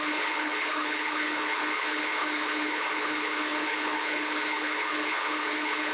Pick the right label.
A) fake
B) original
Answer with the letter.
A